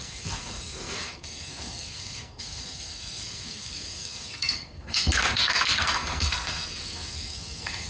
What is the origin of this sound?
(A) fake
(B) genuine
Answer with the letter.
A